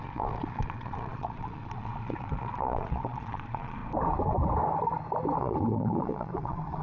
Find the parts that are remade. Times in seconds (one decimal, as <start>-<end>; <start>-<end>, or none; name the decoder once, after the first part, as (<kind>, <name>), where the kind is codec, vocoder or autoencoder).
0.0-3.8 (vocoder, Vocos); 5.4-6.8